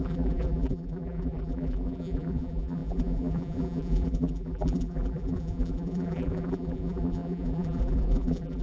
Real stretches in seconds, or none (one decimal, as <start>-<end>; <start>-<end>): none